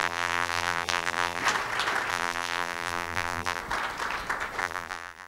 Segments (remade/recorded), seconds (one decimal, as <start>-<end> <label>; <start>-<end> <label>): 0.0-1.4 remade; 1.4-2.1 recorded; 2.1-3.6 remade; 3.6-4.6 recorded; 4.6-5.3 remade